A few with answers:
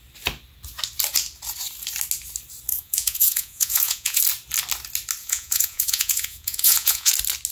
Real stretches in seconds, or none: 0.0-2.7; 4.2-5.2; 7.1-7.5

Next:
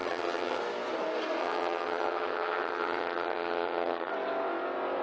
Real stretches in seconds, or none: 0.6-1.4; 4.1-5.0